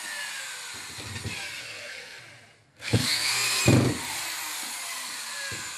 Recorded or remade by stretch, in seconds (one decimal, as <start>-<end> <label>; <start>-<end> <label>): 0.0-1.6 recorded; 1.6-2.2 remade; 2.2-2.7 recorded; 2.7-3.6 remade; 3.6-5.8 recorded